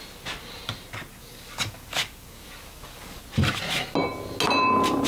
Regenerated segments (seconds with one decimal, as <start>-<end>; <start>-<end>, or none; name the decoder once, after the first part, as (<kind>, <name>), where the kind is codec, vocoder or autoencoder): 1.2-3.2 (codec, DAC)